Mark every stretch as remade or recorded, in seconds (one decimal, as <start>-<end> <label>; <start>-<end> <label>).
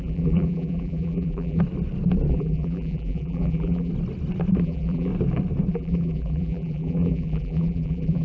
0.0-1.6 remade; 1.6-2.3 recorded; 2.3-3.9 remade; 3.9-4.6 recorded; 4.6-5.1 remade; 5.1-5.7 recorded; 5.7-8.2 remade